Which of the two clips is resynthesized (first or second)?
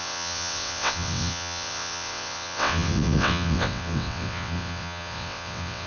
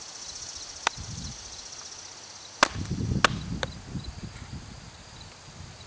first